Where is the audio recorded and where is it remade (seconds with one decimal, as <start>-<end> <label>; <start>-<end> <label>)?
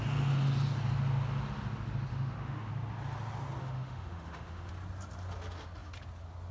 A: 0.0-2.1 recorded; 2.1-2.7 remade; 2.7-3.6 recorded; 3.6-4.7 remade; 4.7-6.5 recorded